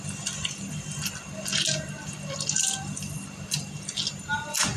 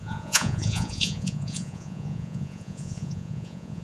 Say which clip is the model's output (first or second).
second